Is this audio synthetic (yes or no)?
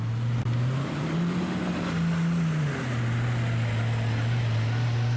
no